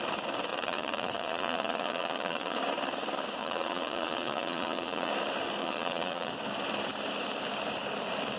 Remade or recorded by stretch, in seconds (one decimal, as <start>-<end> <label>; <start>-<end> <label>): 0.0-0.5 recorded; 0.5-2.6 remade; 2.6-3.4 recorded; 3.4-5.1 remade; 5.1-5.6 recorded; 5.6-6.3 remade; 6.3-8.4 recorded